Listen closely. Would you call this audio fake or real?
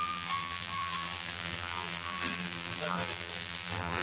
fake